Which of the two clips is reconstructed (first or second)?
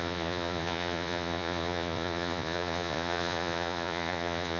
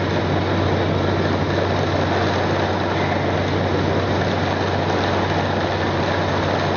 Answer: first